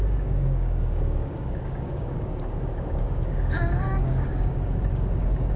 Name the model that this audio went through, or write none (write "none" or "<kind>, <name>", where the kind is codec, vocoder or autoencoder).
codec, DAC